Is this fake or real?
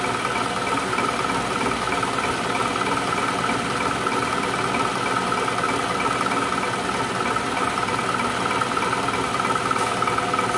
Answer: real